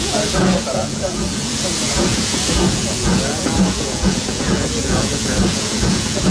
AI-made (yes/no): yes